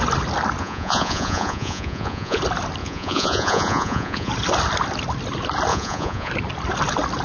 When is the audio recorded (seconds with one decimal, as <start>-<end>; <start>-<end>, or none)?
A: 0.0-0.6; 2.4-2.8; 4.3-5.7; 6.3-7.2